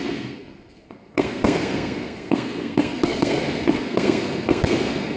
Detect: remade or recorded remade